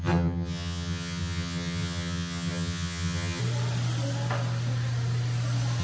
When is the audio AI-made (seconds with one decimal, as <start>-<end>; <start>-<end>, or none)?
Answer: 0.0-3.4